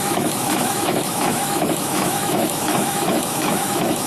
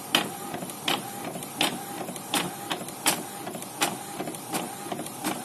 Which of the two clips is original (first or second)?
second